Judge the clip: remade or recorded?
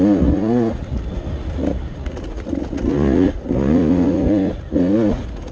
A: remade